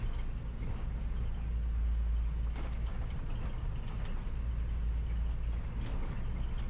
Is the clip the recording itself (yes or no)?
yes